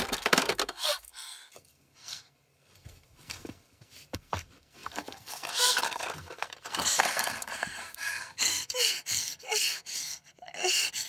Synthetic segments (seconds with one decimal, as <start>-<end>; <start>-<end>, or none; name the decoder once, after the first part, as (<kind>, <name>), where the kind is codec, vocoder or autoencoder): 0.0-11.1 (codec, SNAC)